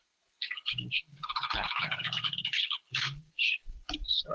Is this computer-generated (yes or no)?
yes